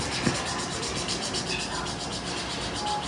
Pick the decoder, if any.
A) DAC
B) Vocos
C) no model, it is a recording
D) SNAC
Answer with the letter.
C